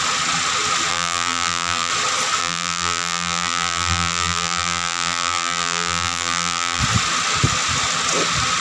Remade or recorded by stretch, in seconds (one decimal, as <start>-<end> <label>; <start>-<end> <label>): 0.0-0.9 recorded; 0.9-1.9 remade; 1.9-2.4 recorded; 2.4-6.8 remade; 6.8-8.6 recorded